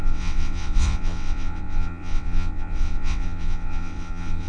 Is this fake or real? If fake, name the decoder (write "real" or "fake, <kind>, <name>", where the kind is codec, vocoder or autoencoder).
fake, vocoder, WaveNeXt